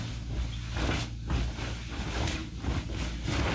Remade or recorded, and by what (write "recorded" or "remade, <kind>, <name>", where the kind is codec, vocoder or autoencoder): recorded